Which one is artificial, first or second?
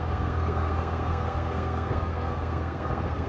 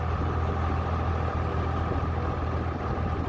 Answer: first